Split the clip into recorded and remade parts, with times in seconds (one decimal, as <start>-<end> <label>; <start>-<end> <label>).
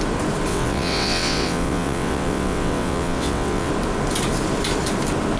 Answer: 0.0-0.5 recorded; 0.5-3.7 remade; 3.7-5.4 recorded